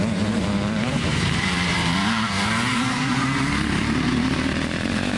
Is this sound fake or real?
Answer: fake